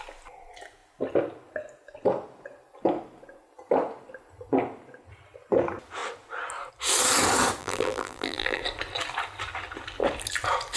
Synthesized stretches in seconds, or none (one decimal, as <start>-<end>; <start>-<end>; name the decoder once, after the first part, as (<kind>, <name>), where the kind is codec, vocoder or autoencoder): 7.6-8.6 (vocoder, BigVGAN v2)